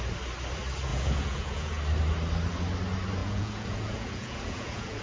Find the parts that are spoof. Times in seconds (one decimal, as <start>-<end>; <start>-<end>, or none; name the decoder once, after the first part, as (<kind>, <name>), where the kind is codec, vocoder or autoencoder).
0.9-1.8 (vocoder, Vocos); 3.2-5.0